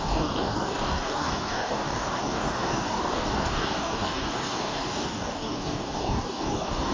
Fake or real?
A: fake